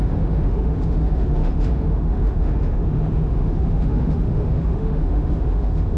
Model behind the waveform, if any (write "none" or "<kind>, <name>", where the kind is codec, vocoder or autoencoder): autoencoder, DAC-VAE